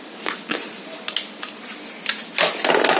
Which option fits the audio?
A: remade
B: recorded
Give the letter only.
B